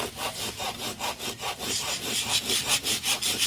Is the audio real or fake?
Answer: real